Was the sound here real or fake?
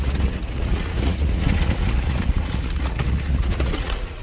fake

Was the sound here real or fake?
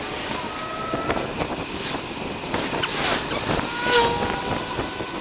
real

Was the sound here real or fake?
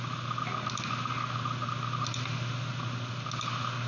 real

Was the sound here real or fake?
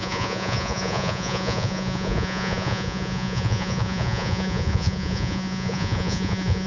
fake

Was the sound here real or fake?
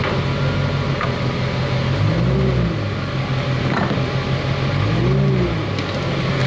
real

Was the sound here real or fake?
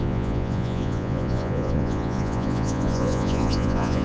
fake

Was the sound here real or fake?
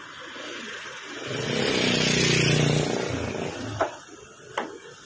real